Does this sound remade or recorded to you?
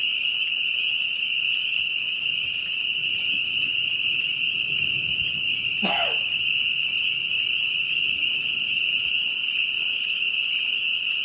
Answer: recorded